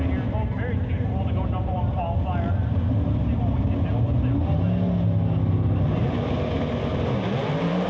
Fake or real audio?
real